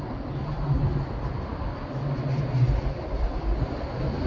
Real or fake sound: real